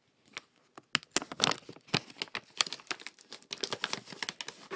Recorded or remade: recorded